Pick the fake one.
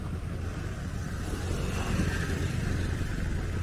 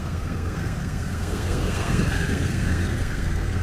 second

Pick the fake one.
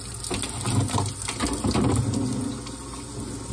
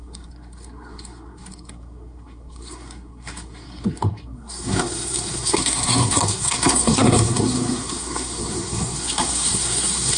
second